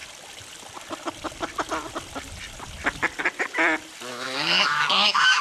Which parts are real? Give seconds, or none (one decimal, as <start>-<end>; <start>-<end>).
0.0-4.1